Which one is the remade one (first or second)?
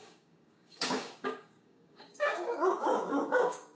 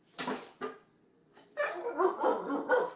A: first